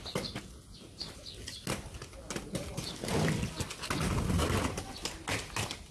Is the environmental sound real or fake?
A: real